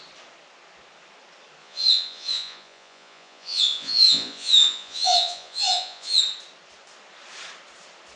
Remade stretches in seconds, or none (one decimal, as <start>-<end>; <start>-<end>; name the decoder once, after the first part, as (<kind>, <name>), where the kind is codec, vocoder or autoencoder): 1.6-6.2 (vocoder, Vocos)